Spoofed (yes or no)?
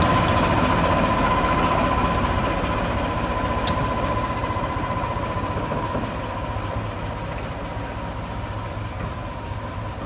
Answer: no